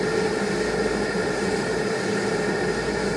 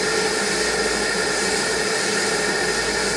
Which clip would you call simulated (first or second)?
first